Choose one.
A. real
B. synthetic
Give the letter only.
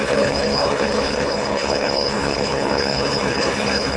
B